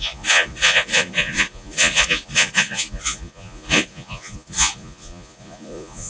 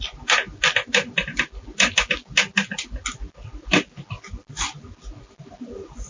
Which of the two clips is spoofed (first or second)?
first